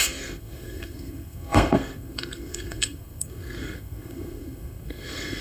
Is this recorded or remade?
remade